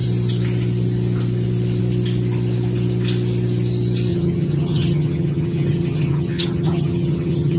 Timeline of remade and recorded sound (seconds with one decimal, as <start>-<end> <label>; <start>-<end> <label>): 0.0-4.1 recorded; 4.1-7.6 remade